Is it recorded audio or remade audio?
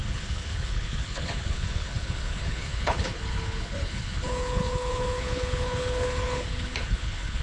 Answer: remade